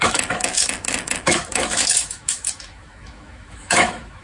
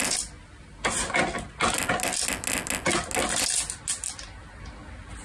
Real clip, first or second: second